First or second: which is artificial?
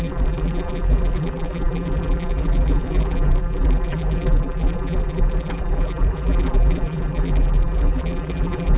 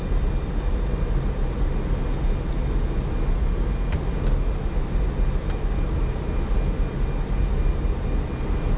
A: first